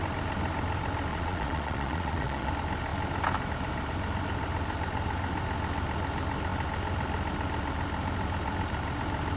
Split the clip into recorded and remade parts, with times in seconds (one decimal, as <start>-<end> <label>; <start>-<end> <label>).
0.0-1.1 recorded; 1.1-2.5 remade; 2.5-9.4 recorded